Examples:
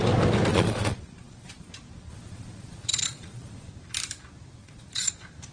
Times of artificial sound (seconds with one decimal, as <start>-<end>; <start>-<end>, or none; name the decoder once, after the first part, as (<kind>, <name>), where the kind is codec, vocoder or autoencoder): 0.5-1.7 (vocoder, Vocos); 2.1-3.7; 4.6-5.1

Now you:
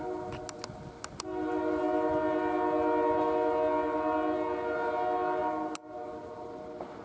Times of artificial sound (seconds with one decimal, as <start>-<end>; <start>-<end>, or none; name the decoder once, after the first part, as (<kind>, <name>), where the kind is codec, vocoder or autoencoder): none

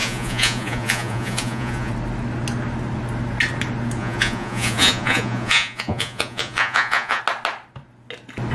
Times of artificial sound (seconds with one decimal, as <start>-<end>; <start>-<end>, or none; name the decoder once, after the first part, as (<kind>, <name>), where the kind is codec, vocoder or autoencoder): 0.0-1.9 (vocoder, Vocos); 4.0-7.2